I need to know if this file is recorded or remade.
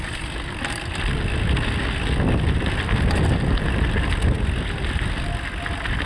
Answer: recorded